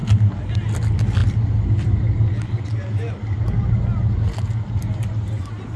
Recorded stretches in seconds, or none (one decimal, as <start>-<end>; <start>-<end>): 0.0-5.8